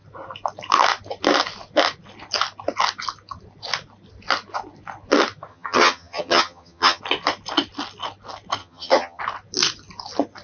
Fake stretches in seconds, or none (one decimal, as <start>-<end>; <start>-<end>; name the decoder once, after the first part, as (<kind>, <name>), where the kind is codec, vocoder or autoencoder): 5.5-7.0 (vocoder, HiFi-GAN); 8.6-9.2